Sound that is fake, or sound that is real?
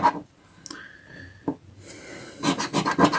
real